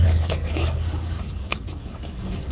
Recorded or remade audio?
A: remade